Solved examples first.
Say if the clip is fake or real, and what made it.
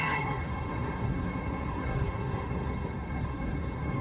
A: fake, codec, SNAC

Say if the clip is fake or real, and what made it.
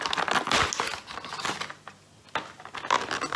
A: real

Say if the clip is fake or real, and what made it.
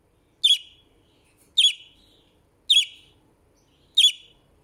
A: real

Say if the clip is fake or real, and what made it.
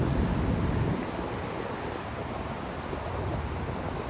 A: real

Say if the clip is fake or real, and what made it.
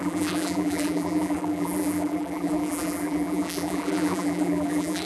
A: fake, vocoder, BigVGAN v2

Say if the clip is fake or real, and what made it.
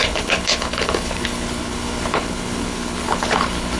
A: fake, codec, HILCodec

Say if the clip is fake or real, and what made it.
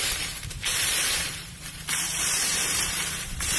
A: fake, vocoder, BigVGAN v2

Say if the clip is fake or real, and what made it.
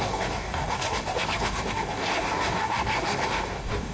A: fake, codec, DAC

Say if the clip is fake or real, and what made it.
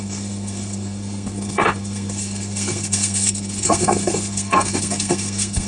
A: fake, codec, SNAC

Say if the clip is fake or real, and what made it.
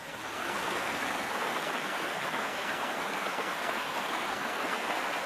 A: fake, codec, SNAC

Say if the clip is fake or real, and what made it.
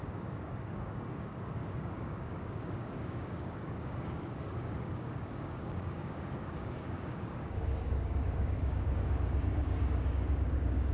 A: fake, codec, DAC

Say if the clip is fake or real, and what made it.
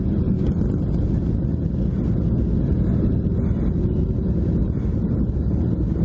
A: real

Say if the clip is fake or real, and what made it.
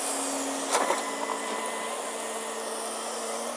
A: real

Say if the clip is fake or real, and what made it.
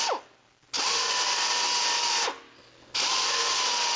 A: real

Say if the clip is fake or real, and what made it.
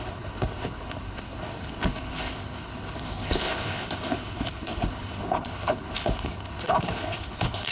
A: fake, codec, HILCodec